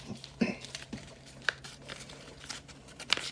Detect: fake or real fake